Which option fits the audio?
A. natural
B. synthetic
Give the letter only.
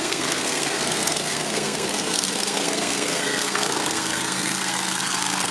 B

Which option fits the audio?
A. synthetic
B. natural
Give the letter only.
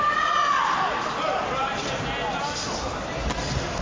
B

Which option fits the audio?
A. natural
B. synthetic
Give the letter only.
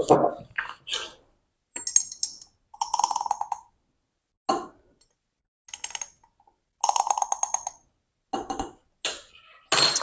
A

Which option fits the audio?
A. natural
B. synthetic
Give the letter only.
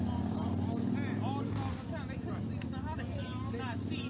A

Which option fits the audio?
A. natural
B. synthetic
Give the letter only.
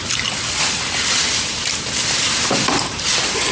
A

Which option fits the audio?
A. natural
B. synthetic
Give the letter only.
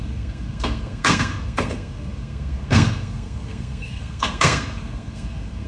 B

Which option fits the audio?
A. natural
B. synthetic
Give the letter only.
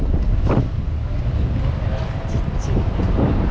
A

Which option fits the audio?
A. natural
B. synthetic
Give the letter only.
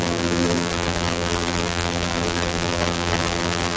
B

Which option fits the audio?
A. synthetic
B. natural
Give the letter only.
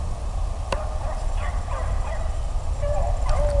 B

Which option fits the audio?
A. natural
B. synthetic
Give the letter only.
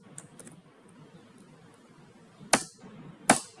A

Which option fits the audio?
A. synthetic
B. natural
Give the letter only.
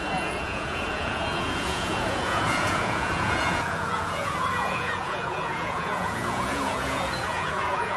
A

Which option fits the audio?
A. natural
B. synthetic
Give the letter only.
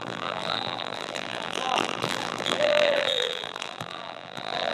B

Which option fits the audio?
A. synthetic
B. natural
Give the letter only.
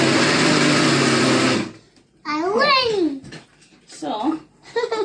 B